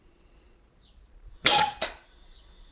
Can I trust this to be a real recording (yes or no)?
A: no